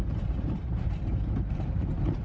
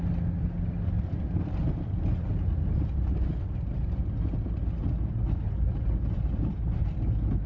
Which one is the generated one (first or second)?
first